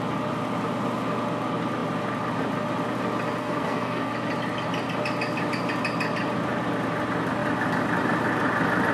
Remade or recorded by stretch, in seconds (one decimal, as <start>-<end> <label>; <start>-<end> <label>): 0.0-3.4 recorded; 3.4-4.1 remade; 4.1-8.9 recorded